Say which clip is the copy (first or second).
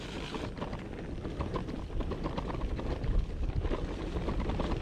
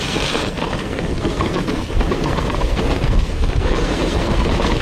second